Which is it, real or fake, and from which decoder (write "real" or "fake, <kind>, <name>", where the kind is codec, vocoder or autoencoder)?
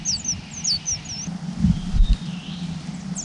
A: real